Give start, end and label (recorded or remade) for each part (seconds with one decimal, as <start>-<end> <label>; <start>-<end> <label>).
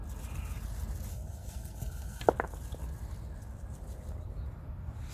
0.0-1.1 recorded; 1.1-2.2 remade; 2.2-5.1 recorded